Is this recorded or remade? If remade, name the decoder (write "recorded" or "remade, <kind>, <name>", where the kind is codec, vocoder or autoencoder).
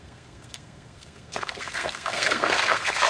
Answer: remade, codec, SNAC